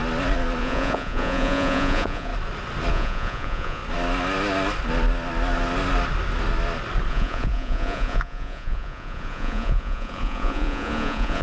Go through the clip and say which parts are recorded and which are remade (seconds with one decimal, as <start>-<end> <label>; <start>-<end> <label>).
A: 0.0-0.6 recorded; 0.6-2.3 remade; 2.3-2.9 recorded; 2.9-3.8 remade; 3.8-7.1 recorded; 7.1-11.4 remade